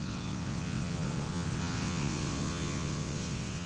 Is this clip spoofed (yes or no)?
yes